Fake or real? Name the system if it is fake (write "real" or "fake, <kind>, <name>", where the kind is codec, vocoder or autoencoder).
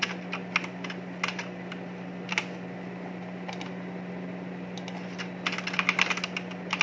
real